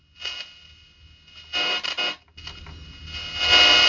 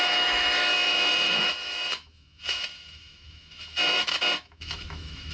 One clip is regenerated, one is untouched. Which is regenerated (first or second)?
second